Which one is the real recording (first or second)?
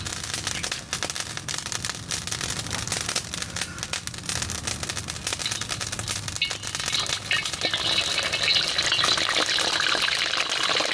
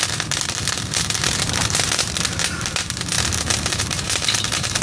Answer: first